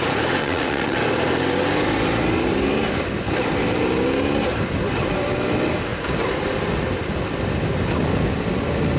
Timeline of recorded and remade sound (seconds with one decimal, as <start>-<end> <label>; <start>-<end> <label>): 0.0-0.4 recorded; 0.4-1.0 remade; 1.0-9.0 recorded